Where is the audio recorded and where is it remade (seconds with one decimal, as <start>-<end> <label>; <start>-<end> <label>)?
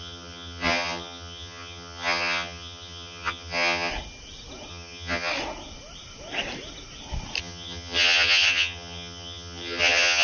0.0-3.9 remade; 3.9-4.7 recorded; 4.7-5.3 remade; 5.3-7.4 recorded; 7.4-10.2 remade